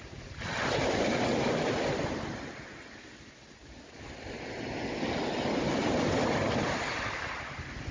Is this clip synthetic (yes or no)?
no